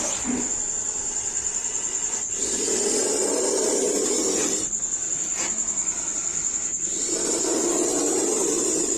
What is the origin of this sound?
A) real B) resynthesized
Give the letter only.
A